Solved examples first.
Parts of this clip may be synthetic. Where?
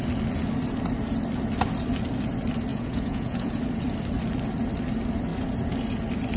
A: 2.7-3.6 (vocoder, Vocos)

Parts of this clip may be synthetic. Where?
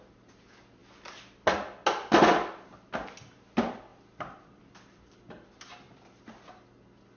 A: none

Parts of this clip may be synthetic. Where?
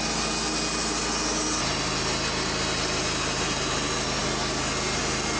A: none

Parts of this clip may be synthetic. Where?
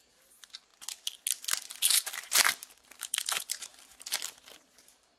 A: 0.0-0.7 (vocoder, BigVGAN v2); 2.2-3.7; 4.7-5.2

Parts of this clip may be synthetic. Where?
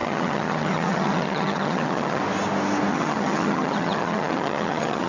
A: 0.0-2.2 (vocoder, HiFi-GAN); 2.9-5.1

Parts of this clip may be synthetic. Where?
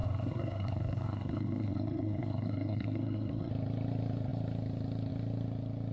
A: 0.0-3.5 (codec, SNAC)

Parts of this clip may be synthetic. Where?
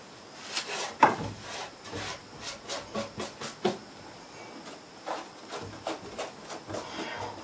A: none